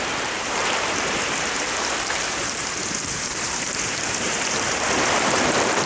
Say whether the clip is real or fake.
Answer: fake